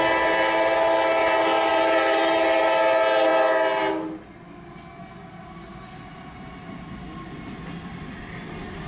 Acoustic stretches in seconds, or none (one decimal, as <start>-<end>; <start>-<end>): 0.0-8.9